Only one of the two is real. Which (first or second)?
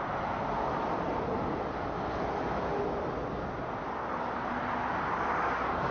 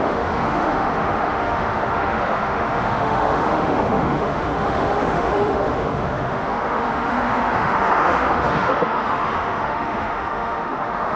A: first